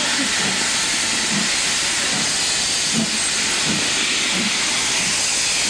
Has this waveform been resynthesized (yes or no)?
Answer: no